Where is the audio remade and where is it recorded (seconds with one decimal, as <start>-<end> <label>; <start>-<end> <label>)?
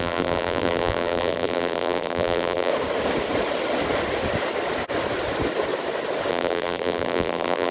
0.0-2.7 remade; 2.7-6.3 recorded; 6.3-7.7 remade